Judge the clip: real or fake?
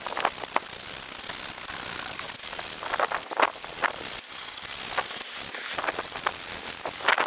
real